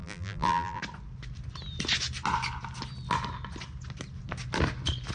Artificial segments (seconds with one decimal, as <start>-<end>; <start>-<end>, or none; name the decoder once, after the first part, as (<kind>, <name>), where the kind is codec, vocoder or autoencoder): 0.0-0.8 (vocoder, BigVGAN v2)